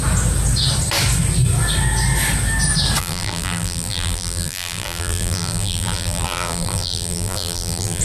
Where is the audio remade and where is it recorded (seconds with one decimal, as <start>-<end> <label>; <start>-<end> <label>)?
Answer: 0.0-3.0 recorded; 3.0-8.0 remade